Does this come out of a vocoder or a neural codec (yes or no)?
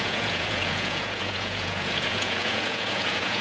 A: yes